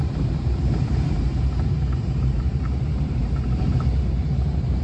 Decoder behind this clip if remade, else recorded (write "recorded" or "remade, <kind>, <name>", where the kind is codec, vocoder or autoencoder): remade, vocoder, BigVGAN v2